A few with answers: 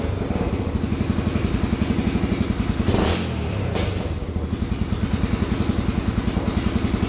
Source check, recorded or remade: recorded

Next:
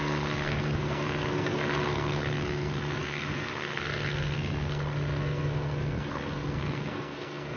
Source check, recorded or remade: remade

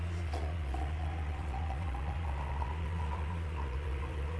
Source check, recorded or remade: remade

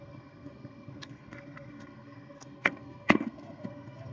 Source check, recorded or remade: remade